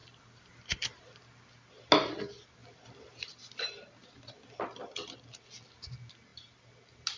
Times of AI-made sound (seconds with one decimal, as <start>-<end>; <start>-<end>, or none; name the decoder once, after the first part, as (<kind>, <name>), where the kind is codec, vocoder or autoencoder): 0.0-1.5 (vocoder, BigVGAN v2); 2.6-3.6; 4.0-5.4; 6.3-7.2